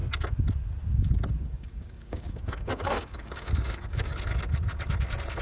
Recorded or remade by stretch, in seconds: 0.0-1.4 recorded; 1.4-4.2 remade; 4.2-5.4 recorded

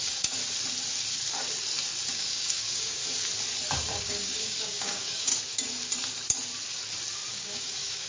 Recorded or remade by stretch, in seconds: 0.0-0.4 remade; 0.4-2.1 recorded; 2.1-3.0 remade; 3.0-3.7 recorded; 3.7-5.3 remade; 5.3-7.3 recorded; 7.3-8.1 remade

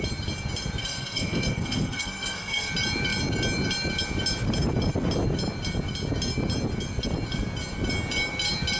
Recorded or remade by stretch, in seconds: 0.0-0.8 recorded; 0.8-2.7 remade; 2.7-8.8 recorded

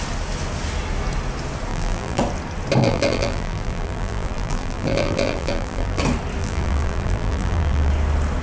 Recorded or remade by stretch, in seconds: 0.0-1.7 recorded; 1.7-2.2 remade; 2.2-2.8 recorded; 2.8-6.0 remade; 6.0-6.4 recorded; 6.4-7.9 remade; 7.9-8.4 recorded

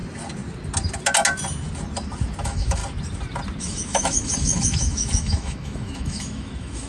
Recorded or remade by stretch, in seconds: 0.0-2.4 recorded; 2.4-2.8 remade; 2.8-3.6 recorded; 3.6-6.9 remade

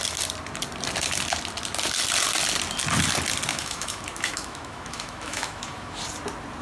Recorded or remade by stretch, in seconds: 0.0-3.5 recorded; 3.5-6.0 remade; 6.0-6.6 recorded